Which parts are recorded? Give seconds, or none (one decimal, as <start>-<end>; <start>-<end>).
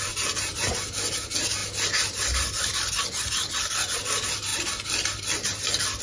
0.0-6.0